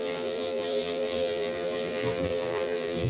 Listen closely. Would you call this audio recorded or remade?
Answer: remade